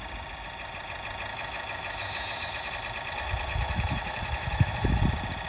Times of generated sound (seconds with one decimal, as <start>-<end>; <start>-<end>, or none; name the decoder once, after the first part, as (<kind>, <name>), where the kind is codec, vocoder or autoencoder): 1.3-2.7 (autoencoder, DAC-VAE); 3.5-5.0

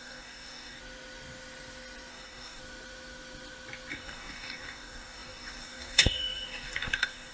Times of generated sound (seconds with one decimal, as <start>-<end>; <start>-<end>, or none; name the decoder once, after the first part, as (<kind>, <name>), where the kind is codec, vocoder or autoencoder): 0.0-0.8 (codec, DAC); 2.1-2.6; 3.9-7.3

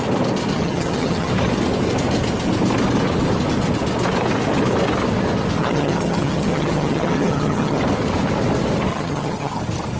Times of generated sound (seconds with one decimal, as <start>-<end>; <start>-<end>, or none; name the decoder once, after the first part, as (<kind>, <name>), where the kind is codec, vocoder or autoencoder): 0.5-1.3 (vocoder, HiFi-GAN); 5.6-7.8; 8.9-9.6

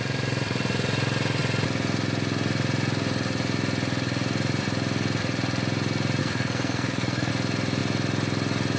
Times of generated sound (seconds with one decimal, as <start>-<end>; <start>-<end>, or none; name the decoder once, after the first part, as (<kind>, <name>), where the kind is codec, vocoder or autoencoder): 6.2-7.3 (codec, SNAC)

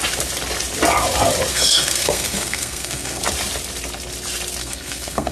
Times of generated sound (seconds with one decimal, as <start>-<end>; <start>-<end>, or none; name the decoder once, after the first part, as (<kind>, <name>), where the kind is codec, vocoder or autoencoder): 1.5-3.2 (codec, SNAC); 4.6-5.3

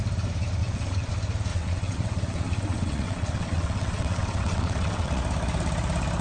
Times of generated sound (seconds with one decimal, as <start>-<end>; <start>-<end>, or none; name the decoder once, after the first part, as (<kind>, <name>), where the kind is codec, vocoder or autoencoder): 0.6-1.1 (vocoder, WaveNeXt); 1.5-5.2

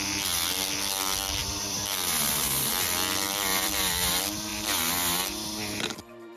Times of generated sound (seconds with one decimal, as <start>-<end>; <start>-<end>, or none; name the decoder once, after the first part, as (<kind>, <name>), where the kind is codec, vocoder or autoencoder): 1.4-2.7 (vocoder, BigVGAN v2); 3.5-4.1; 4.5-6.4